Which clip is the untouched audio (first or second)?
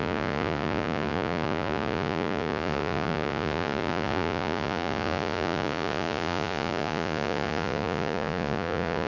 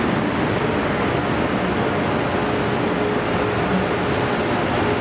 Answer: second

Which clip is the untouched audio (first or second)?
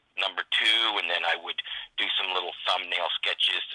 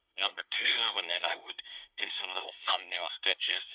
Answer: first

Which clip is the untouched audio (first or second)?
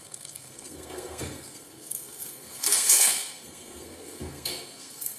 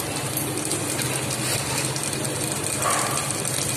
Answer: second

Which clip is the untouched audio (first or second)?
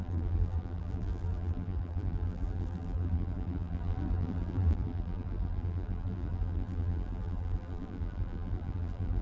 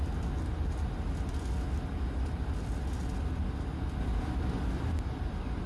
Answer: second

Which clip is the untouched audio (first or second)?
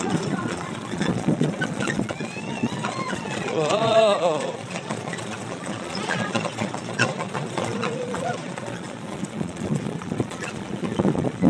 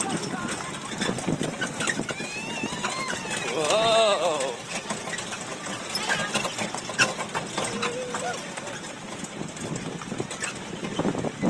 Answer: second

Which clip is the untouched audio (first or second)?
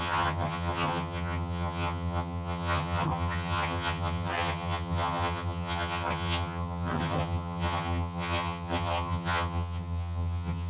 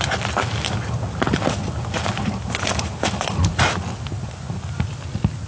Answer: second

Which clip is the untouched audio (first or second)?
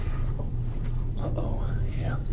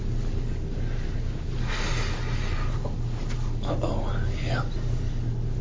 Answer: second